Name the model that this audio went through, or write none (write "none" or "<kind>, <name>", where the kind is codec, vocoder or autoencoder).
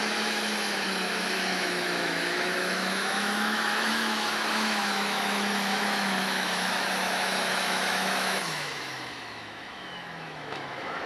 autoencoder, DAC-VAE